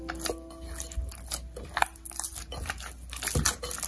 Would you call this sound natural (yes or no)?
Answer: yes